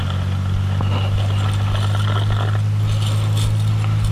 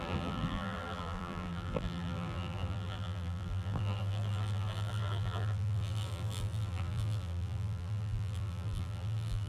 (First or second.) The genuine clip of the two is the first